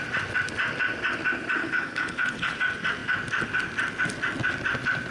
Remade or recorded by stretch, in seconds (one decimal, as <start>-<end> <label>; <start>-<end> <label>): 0.0-1.6 recorded; 1.6-2.6 remade; 2.6-5.1 recorded